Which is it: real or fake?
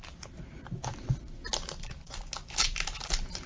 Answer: real